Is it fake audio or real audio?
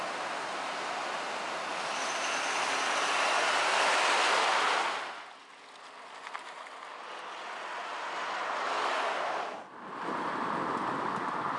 real